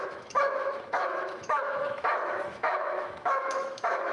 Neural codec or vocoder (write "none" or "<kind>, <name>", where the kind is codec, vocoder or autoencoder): autoencoder, DAC-VAE